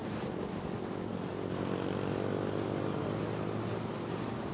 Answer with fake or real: real